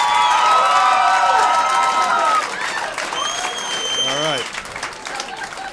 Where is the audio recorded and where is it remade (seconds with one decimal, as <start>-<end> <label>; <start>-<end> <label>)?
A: 0.0-5.7 recorded